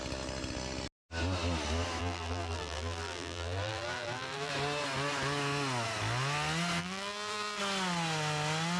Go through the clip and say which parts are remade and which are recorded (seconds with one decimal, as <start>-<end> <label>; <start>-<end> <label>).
0.0-2.0 recorded; 2.0-4.5 remade; 4.5-6.8 recorded; 6.8-7.6 remade; 7.6-8.8 recorded